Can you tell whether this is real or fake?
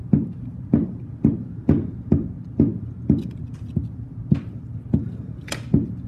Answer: real